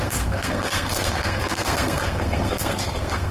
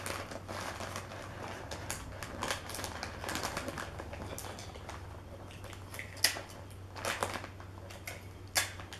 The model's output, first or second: first